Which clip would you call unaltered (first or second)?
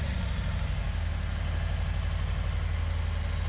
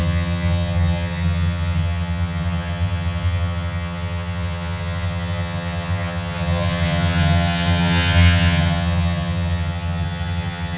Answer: first